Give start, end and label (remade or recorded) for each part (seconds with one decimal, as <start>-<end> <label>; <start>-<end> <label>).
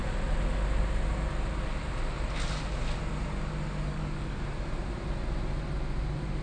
0.0-3.9 recorded; 3.9-4.4 remade; 4.4-6.4 recorded